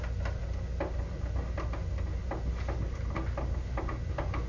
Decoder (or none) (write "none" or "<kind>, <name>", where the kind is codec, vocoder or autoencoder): none